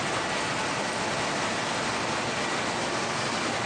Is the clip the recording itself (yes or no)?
yes